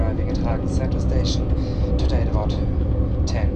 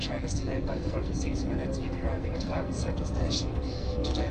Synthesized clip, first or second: second